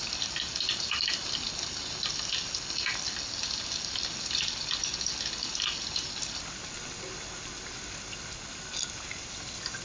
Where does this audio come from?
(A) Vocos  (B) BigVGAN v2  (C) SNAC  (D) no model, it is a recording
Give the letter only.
D